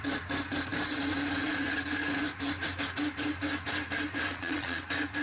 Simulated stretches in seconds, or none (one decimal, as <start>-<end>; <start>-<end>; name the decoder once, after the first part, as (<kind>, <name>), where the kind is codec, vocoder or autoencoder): 4.3-4.8 (vocoder, Vocos)